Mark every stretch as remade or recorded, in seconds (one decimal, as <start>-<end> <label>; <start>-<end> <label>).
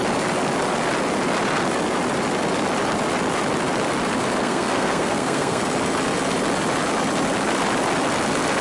0.0-4.4 recorded; 4.4-5.6 remade; 5.6-8.6 recorded